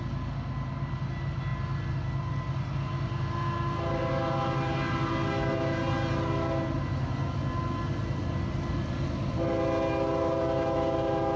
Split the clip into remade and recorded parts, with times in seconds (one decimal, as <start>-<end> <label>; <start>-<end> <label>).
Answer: 0.0-11.4 recorded